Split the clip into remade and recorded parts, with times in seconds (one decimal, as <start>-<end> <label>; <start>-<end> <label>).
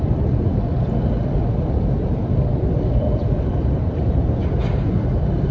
0.0-5.5 recorded